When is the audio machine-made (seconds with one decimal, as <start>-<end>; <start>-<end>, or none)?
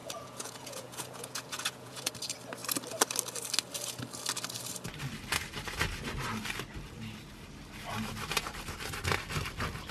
0.0-2.1